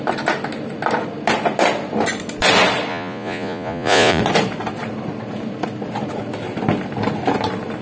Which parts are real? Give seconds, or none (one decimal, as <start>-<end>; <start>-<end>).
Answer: 0.0-2.9; 4.2-7.8